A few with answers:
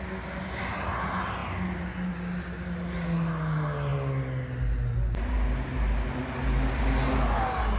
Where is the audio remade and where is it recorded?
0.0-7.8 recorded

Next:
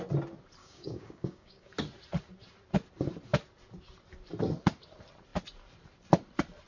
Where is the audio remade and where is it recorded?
0.0-0.6 recorded; 0.6-1.7 remade; 1.7-6.7 recorded